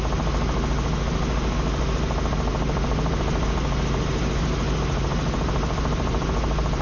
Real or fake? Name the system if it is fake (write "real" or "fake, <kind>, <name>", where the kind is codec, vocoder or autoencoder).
real